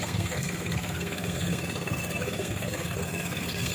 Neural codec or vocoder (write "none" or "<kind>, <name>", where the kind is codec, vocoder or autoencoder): codec, SNAC